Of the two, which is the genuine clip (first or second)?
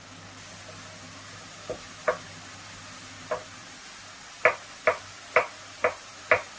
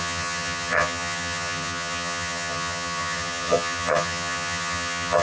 first